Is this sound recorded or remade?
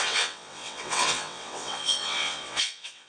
remade